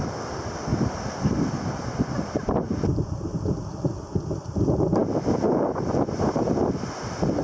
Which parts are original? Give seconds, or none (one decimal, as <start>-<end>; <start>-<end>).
0.0-7.4